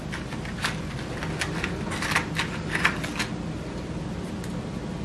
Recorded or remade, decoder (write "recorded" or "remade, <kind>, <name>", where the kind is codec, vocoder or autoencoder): recorded